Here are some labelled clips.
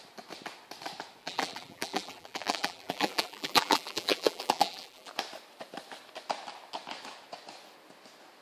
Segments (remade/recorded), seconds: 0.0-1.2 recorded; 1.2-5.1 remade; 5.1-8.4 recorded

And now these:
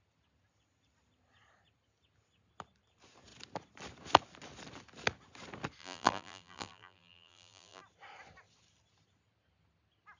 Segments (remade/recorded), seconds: 0.0-5.8 recorded; 5.8-7.8 remade; 7.8-10.2 recorded

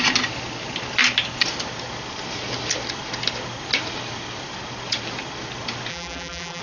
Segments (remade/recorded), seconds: 0.0-5.9 recorded; 5.9-6.6 remade

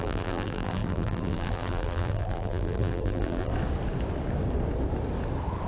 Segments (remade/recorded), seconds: 0.0-3.5 remade; 3.5-5.7 recorded

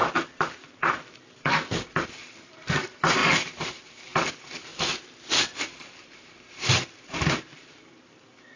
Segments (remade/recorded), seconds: 0.0-0.6 recorded; 0.6-4.7 remade; 4.7-5.6 recorded; 5.6-8.6 remade

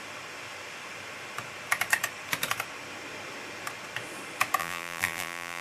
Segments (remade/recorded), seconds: 0.0-4.6 recorded; 4.6-5.6 remade